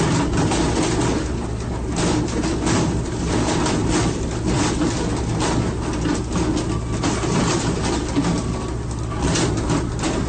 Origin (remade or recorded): recorded